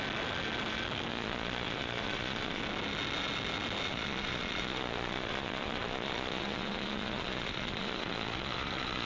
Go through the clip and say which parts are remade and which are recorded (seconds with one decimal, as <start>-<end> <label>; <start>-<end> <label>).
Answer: 0.0-1.1 recorded; 1.1-2.6 remade; 2.6-3.9 recorded; 3.9-9.1 remade